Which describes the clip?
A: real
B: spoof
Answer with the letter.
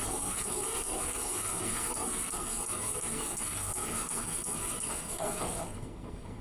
B